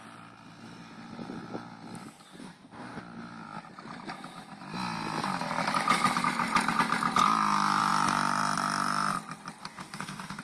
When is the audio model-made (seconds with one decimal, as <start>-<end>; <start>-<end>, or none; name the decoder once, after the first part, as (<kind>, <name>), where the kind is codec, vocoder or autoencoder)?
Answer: 2.4-3.0 (codec, DAC); 9.6-10.4